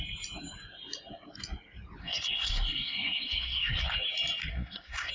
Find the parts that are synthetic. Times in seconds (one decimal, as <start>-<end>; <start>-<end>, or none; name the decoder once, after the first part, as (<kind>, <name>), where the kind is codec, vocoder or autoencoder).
2.0-3.8 (codec, SNAC); 4.5-5.1